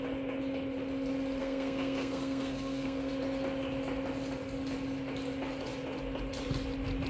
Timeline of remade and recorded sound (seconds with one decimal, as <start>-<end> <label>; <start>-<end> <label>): 0.0-1.4 recorded; 1.4-3.1 remade; 3.1-7.1 recorded